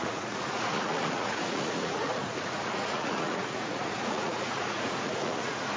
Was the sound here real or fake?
fake